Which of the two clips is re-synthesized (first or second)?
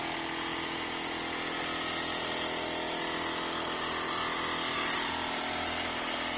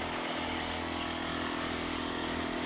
second